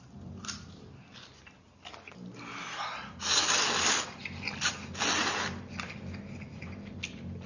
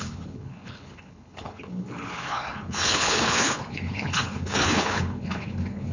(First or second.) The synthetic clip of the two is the second